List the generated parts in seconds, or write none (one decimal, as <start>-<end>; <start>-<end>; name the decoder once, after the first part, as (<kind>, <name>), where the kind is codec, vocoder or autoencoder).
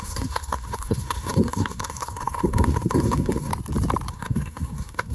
0.0-3.5 (codec, SNAC); 4.1-5.1